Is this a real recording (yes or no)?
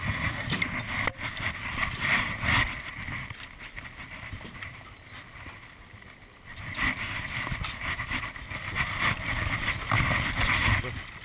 no